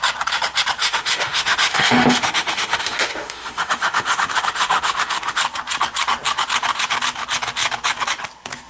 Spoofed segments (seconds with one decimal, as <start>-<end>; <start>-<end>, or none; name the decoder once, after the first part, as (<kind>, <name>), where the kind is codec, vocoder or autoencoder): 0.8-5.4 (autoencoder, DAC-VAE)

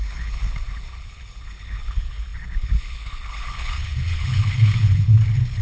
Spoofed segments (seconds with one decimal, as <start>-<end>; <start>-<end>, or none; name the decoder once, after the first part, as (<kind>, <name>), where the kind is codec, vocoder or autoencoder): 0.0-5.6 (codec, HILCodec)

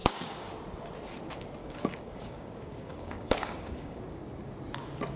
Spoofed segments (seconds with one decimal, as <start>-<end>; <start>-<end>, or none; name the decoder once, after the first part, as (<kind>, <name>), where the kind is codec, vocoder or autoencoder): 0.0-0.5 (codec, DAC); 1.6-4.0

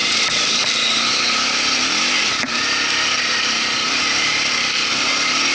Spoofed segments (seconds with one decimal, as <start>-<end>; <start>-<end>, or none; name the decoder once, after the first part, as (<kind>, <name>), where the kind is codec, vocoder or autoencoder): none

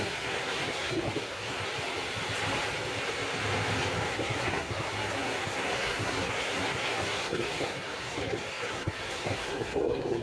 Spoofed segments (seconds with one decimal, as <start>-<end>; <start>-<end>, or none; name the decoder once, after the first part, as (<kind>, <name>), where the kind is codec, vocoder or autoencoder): 0.0-1.7 (codec, SNAC); 4.1-10.2

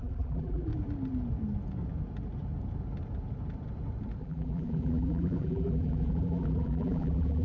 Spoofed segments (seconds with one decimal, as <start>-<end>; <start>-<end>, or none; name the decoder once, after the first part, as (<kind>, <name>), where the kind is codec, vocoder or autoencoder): 0.0-0.7 (vocoder, BigVGAN v2); 4.2-7.4

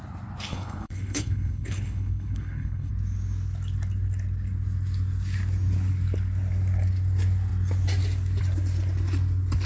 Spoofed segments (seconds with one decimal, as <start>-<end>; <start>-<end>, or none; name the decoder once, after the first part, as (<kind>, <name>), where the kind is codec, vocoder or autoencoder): 0.5-2.9 (codec, HILCodec)

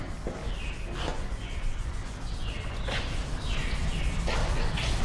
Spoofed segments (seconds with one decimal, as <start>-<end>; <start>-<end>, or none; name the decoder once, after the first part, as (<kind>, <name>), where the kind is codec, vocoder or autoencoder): 1.1-3.2 (vocoder, Vocos); 4.4-5.0